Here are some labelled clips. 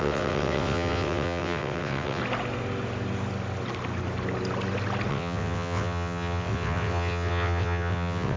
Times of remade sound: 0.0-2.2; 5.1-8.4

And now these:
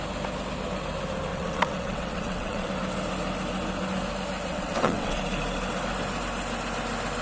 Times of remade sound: 1.3-2.7; 4.5-5.2